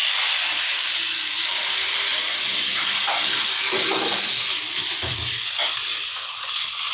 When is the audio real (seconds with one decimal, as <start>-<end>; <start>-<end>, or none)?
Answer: 0.0-6.9